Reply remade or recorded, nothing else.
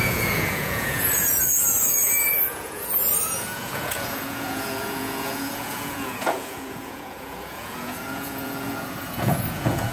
remade